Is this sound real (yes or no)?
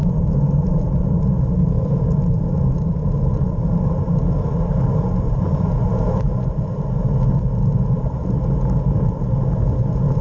yes